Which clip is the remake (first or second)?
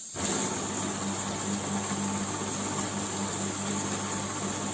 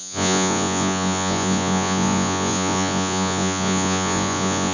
second